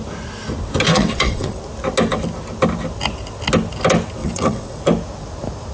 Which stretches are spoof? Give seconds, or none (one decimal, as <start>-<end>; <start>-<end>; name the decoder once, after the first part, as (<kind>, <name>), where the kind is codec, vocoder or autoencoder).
0.9-1.6 (vocoder, WaveNeXt); 4.2-4.8